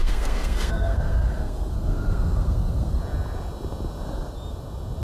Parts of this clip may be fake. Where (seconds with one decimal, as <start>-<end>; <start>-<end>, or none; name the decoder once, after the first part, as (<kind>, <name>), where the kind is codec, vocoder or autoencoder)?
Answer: 0.0-3.0 (codec, SNAC)